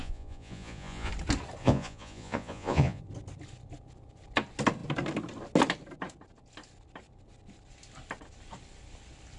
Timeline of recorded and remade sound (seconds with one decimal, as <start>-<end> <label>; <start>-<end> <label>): 0.0-1.1 remade; 1.1-1.6 recorded; 1.6-3.0 remade; 3.0-9.4 recorded